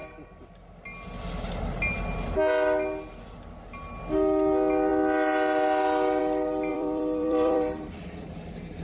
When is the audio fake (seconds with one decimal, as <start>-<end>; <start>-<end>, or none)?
6.7-8.0